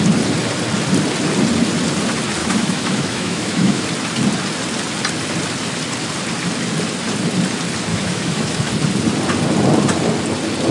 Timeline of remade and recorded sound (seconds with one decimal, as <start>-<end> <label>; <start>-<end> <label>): 0.0-2.4 recorded; 2.4-3.8 remade; 3.8-7.9 recorded; 7.9-8.7 remade; 8.7-10.7 recorded